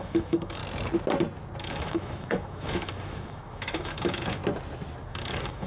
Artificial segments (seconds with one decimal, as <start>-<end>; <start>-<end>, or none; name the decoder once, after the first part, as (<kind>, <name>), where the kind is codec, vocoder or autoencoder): 0.0-0.6 (autoencoder, DAC-VAE); 1.6-4.4; 5.1-5.7